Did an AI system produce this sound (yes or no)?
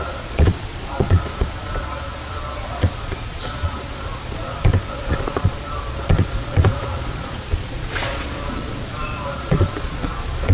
yes